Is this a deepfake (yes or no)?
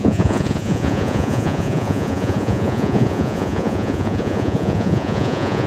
yes